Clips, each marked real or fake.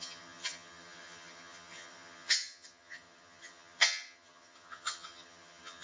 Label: fake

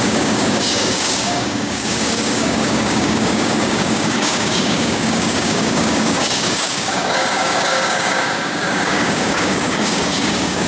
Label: fake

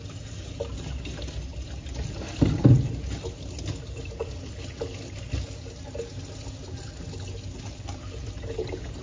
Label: real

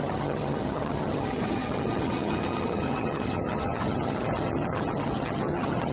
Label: fake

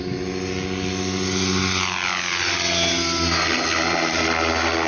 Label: real